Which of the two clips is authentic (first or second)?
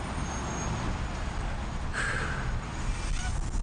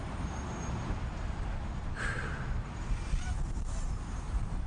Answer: first